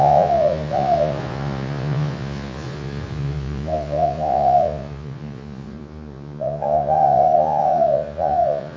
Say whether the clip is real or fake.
fake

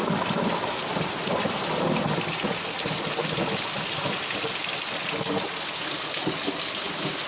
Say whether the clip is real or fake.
real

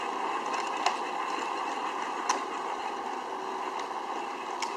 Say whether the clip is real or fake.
real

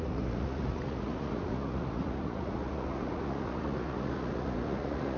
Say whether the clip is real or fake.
fake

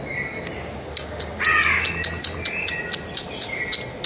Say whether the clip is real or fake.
real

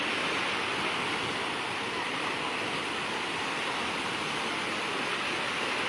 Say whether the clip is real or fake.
real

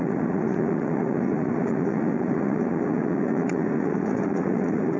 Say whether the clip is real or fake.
fake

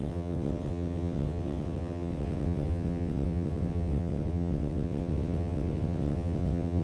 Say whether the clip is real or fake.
fake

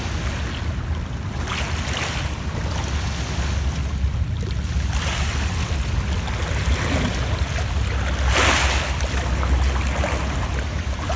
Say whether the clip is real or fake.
real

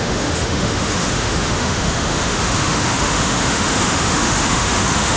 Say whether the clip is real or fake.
fake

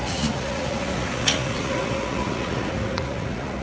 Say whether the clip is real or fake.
fake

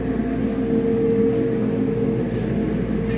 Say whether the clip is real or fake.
real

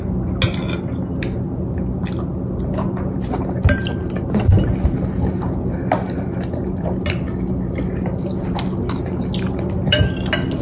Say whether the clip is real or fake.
real